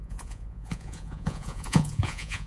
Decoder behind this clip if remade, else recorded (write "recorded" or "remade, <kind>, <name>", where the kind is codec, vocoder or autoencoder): remade, vocoder, Vocos